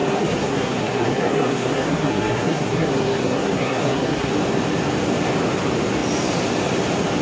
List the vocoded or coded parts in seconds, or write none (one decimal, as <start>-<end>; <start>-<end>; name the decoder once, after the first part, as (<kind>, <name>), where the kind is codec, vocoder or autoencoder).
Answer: 0.0-4.3 (codec, SNAC)